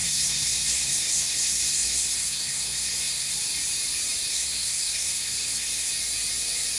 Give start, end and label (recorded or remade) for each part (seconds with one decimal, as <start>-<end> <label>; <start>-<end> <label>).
0.0-3.3 remade; 3.3-4.3 recorded; 4.3-5.9 remade; 5.9-6.8 recorded